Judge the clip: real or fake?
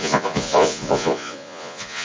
fake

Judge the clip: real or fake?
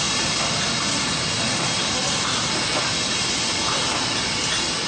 real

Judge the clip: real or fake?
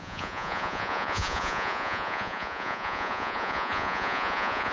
fake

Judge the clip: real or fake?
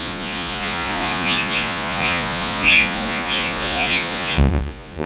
fake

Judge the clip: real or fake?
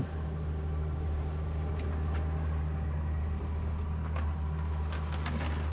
real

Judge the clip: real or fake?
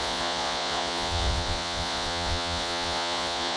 fake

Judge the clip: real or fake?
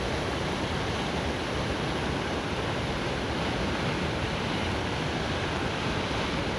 real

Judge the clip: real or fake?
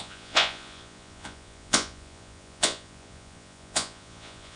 fake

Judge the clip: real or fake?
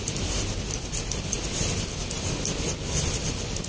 real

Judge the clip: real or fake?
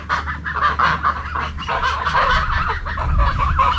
real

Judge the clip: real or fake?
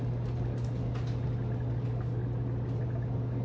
real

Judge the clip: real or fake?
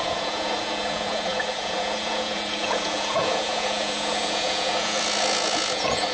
fake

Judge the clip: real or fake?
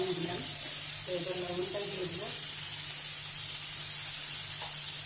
real